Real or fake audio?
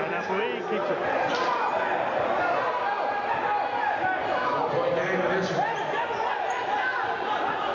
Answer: real